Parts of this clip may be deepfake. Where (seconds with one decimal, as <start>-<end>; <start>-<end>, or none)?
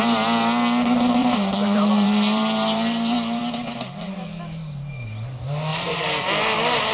1.2-3.4